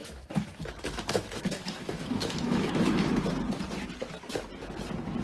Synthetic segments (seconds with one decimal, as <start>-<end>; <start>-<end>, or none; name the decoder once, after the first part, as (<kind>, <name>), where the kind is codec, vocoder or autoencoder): 0.0-3.1 (autoencoder, DAC-VAE)